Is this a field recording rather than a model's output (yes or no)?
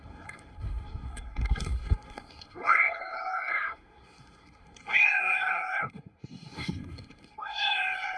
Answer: no